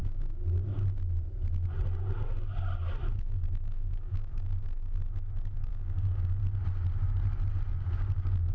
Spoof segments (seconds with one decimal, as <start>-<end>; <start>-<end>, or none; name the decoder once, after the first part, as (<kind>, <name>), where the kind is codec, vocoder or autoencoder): 3.3-6.4 (codec, DAC); 7.7-8.5

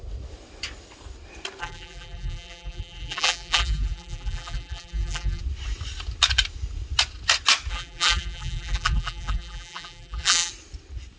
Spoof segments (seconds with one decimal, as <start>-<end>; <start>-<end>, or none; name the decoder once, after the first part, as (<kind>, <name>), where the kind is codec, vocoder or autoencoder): 1.6-5.4 (vocoder, BigVGAN v2); 7.7-10.5

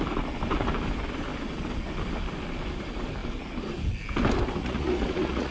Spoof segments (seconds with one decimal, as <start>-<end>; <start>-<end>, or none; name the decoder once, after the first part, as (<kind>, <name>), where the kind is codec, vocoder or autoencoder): 4.6-5.5 (vocoder, Vocos)

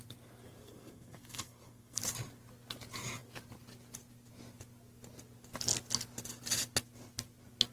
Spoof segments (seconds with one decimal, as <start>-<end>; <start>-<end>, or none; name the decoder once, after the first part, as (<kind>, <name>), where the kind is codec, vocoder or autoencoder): 0.6-2.0 (codec, SNAC)

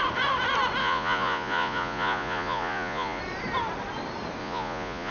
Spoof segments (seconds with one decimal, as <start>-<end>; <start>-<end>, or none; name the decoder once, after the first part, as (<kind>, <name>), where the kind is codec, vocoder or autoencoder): 0.8-3.2 (vocoder, Vocos); 4.4-5.1

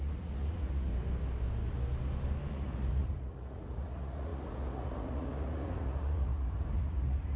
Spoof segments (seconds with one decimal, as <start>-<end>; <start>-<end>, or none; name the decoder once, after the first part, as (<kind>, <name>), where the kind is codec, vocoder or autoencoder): 0.0-0.9 (vocoder, Vocos); 2.5-7.4

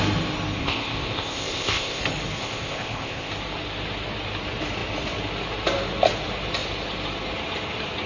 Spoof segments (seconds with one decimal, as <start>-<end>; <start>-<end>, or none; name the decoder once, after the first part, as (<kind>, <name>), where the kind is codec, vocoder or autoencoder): 0.6-2.0 (codec, ZipCodec); 2.4-3.3

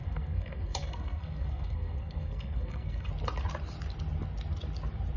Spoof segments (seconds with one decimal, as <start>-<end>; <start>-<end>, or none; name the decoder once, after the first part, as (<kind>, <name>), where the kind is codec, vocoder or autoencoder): 0.0-3.1 (codec, SNAC)